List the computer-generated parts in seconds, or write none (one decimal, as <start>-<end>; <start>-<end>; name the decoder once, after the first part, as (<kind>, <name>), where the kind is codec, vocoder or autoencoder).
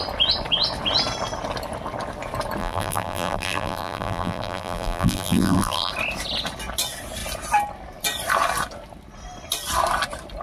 2.6-5.9 (vocoder, BigVGAN v2)